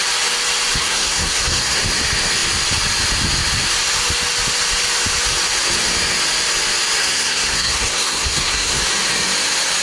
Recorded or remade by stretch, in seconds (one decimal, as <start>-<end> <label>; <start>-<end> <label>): 0.0-0.8 recorded; 0.8-1.8 remade; 1.8-7.0 recorded; 7.0-8.8 remade; 8.8-9.8 recorded